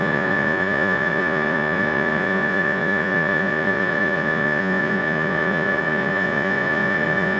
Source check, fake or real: fake